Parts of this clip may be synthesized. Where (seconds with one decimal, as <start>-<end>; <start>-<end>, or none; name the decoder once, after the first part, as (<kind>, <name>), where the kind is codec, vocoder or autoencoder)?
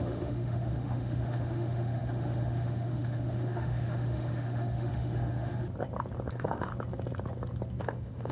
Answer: 0.0-5.5 (autoencoder, DAC-VAE); 6.3-6.7; 7.8-8.3